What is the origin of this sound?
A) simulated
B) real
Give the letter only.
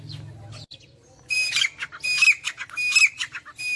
B